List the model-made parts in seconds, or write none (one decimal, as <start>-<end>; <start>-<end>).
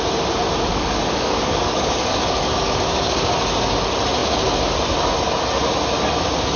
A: 0.7-3.3